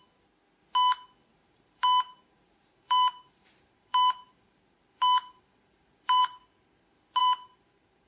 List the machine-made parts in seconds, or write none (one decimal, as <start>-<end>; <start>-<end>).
1.3-6.2; 7.2-8.1